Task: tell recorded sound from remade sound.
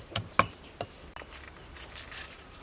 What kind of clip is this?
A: recorded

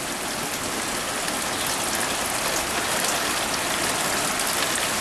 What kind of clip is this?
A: recorded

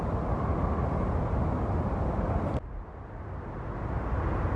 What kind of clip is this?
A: recorded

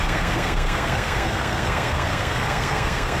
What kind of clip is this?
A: remade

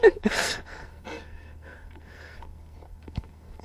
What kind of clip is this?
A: remade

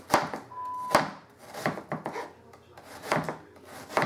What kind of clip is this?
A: recorded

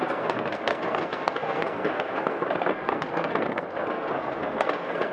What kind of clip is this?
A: remade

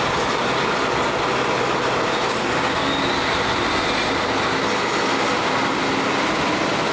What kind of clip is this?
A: recorded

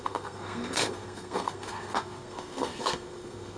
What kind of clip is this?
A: remade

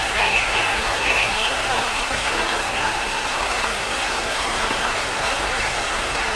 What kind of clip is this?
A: remade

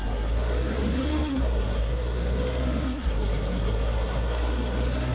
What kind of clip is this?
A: remade